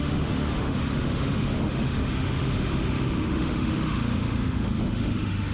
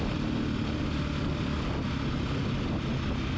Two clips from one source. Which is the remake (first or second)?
first